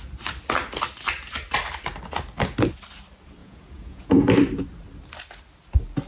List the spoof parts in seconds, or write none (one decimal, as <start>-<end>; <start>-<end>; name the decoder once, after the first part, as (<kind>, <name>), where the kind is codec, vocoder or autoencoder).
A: 3.4-4.3 (vocoder, Vocos)